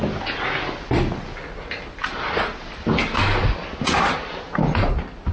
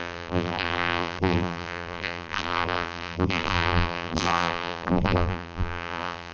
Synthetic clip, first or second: second